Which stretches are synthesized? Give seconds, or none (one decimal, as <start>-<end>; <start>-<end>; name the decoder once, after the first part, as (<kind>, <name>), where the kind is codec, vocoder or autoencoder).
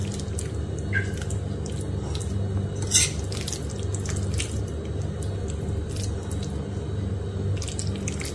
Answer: none